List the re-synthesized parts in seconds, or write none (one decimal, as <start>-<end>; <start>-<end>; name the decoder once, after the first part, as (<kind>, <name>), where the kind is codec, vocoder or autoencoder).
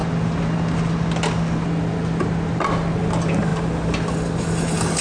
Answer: none